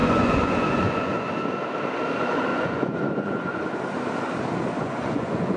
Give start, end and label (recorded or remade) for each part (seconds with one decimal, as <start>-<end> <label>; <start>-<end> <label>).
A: 0.0-1.3 remade; 1.3-2.5 recorded; 2.5-3.6 remade; 3.6-4.8 recorded; 4.8-5.6 remade